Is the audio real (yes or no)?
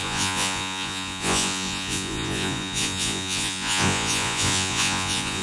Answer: no